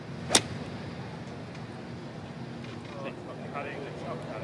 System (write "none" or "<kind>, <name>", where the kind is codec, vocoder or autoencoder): none